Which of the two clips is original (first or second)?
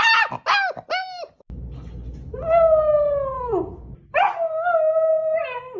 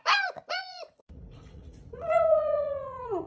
first